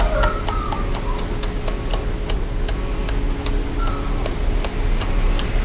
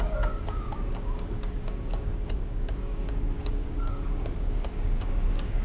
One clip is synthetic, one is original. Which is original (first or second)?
first